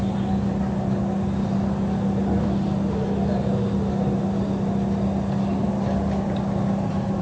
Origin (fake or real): real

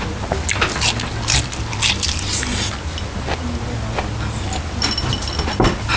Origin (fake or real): real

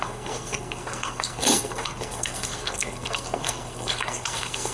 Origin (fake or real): fake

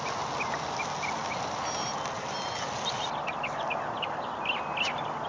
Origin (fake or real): real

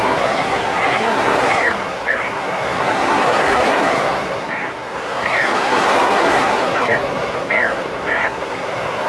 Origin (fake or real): fake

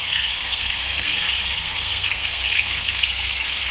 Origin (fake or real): fake